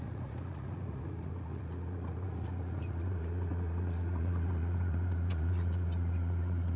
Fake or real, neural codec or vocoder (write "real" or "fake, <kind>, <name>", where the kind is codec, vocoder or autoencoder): fake, vocoder, Vocos